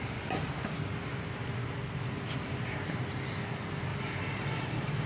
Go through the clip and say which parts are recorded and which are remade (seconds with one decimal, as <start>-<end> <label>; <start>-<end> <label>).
0.0-1.1 recorded; 1.1-3.0 remade; 3.0-3.9 recorded; 3.9-5.1 remade